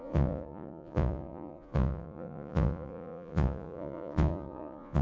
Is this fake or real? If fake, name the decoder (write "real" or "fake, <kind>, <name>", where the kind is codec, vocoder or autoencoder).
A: fake, vocoder, Vocos